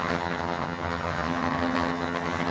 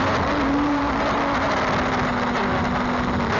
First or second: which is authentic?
second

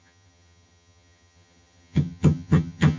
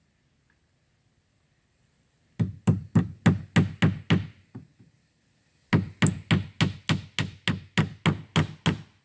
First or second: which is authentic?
second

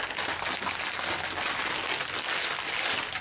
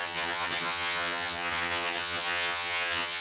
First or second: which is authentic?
first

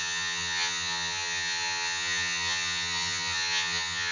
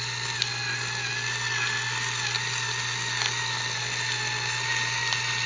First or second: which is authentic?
second